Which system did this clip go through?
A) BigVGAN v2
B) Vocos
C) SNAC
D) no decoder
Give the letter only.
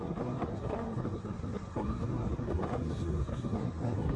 C